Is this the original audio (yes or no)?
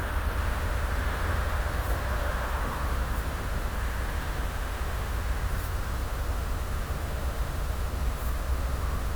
no